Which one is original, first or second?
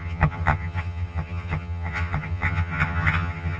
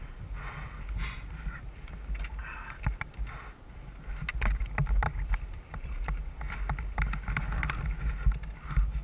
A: second